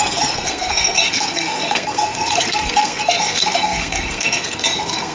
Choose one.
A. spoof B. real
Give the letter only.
A